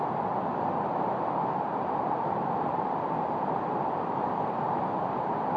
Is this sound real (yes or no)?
yes